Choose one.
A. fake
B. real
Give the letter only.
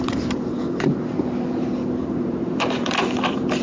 A